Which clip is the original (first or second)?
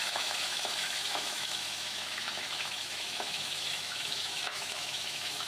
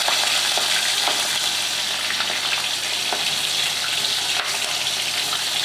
second